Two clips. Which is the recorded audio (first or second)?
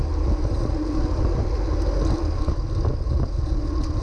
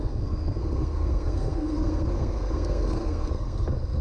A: first